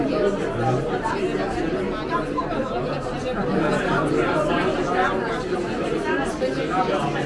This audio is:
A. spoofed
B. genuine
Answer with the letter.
B